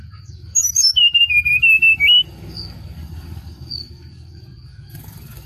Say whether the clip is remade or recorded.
remade